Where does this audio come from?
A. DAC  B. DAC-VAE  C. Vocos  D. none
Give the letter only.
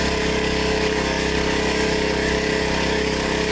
A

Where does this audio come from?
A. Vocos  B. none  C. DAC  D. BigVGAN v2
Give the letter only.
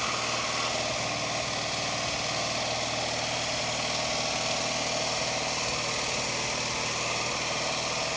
B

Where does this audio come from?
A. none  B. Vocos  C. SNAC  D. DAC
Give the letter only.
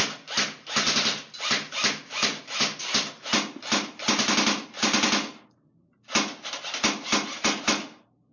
A